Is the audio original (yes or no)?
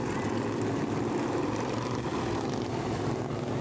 yes